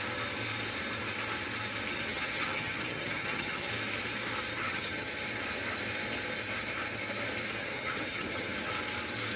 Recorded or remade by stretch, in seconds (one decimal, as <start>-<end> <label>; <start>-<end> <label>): 0.0-2.1 recorded; 2.1-3.7 remade; 3.7-4.6 recorded; 4.6-5.1 remade; 5.1-7.6 recorded; 7.6-8.7 remade; 8.7-9.4 recorded